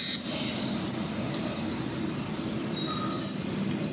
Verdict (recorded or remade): recorded